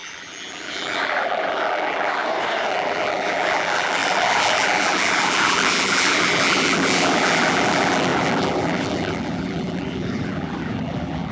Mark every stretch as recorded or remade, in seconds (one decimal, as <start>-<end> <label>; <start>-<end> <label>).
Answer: 0.0-2.2 remade; 2.2-2.7 recorded; 2.7-11.3 remade